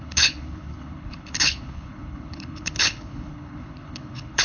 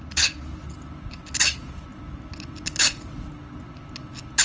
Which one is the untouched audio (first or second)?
second